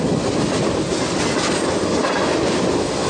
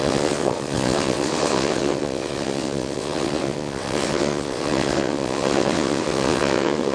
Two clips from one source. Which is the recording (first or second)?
first